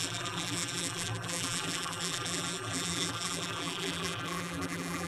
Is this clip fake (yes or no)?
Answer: yes